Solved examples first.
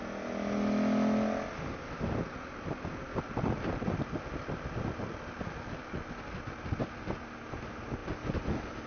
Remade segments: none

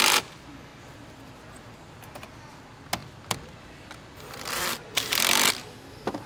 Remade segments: 3.0-4.8 (vocoder, BigVGAN v2)

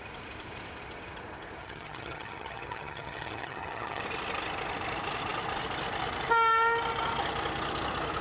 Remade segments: 1.6-4.0 (vocoder, HiFi-GAN)

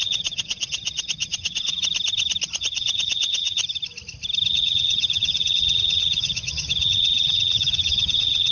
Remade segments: 0.0-1.8 (vocoder, WaveNeXt); 2.6-3.6; 4.5-8.5

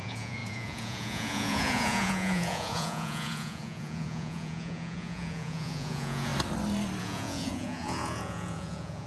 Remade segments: 0.0-6.3 (vocoder, Vocos); 7.0-9.1